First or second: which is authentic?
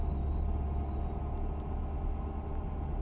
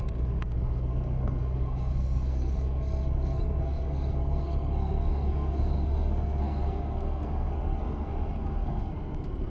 first